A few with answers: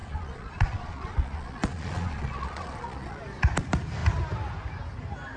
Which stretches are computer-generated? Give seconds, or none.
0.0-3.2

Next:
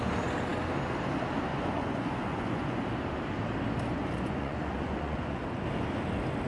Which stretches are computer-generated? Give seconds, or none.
1.5-2.8; 4.0-5.4

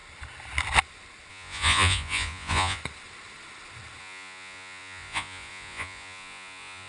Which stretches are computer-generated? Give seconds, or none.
1.3-2.8; 4.0-6.9

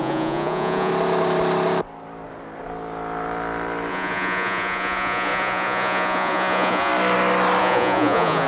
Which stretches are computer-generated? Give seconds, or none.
0.0-0.9; 3.9-6.9; 7.6-8.5

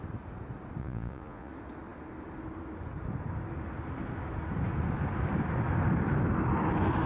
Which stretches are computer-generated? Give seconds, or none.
0.8-1.5